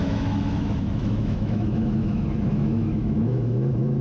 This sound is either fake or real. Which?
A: fake